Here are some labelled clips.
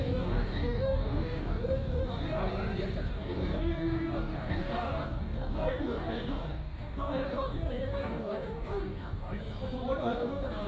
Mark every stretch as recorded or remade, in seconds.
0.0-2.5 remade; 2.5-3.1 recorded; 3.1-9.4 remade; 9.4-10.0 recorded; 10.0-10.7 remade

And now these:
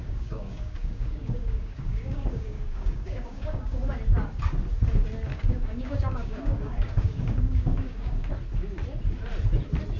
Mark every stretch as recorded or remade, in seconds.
0.0-3.8 remade; 3.8-5.3 recorded; 5.3-8.3 remade; 8.3-10.0 recorded